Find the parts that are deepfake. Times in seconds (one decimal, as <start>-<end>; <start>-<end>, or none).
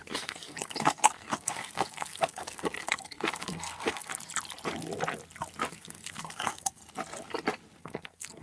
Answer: 0.0-4.1; 5.7-6.8; 7.8-8.4